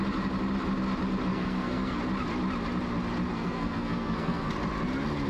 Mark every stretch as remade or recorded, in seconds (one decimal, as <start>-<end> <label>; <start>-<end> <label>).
0.0-1.3 recorded; 1.3-2.0 remade; 2.0-3.3 recorded; 3.3-4.5 remade; 4.5-5.3 recorded